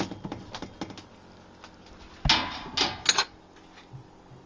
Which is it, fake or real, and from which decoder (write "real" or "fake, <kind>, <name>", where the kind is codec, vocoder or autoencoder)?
real